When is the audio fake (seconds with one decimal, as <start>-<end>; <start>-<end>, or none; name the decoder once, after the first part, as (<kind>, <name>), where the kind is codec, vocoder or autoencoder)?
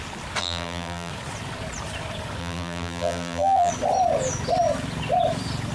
0.4-1.1 (vocoder, BigVGAN v2); 2.4-3.7